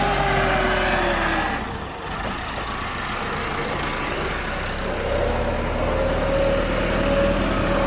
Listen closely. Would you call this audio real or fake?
real